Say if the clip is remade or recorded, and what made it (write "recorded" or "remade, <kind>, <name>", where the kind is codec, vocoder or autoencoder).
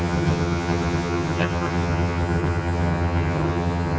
remade, vocoder, HiFi-GAN